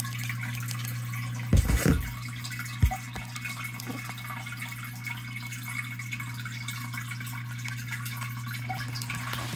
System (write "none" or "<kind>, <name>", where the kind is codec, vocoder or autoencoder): none